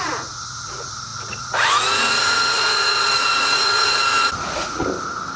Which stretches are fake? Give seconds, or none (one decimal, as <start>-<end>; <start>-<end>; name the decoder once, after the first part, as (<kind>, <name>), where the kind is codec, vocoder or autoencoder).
0.0-4.8 (vocoder, Vocos)